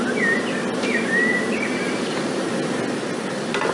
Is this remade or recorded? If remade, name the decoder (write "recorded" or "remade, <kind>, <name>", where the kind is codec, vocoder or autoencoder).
recorded